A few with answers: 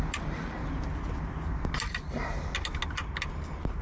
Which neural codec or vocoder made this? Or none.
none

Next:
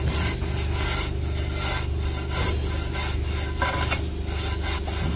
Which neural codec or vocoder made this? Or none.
none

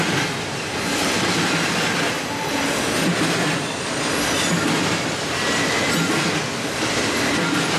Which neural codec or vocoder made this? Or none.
none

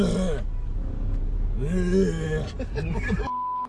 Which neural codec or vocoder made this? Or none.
none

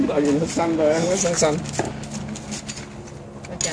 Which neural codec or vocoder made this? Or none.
none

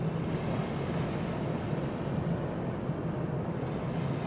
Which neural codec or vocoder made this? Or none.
none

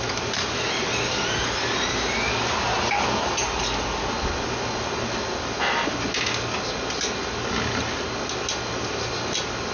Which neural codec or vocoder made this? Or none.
none